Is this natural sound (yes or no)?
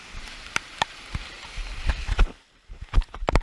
yes